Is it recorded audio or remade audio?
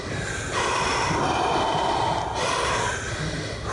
recorded